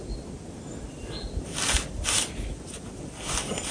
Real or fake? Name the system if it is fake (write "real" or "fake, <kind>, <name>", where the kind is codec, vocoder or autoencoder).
real